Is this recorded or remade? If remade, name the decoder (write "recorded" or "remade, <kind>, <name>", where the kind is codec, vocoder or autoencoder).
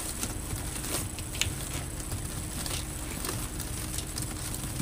recorded